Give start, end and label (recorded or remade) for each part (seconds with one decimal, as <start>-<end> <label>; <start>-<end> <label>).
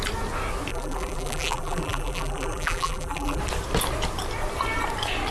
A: 0.0-0.7 recorded; 0.7-3.4 remade; 3.4-5.3 recorded